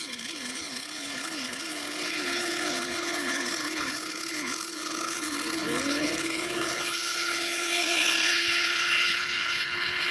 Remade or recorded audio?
remade